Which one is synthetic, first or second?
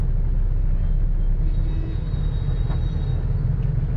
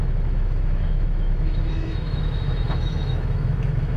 second